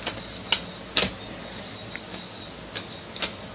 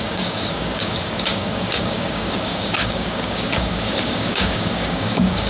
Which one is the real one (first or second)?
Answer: first